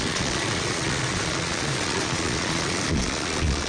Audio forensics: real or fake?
fake